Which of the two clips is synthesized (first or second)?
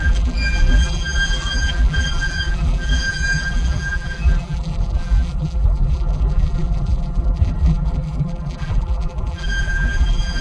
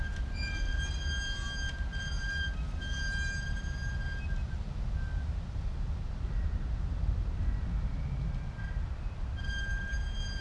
first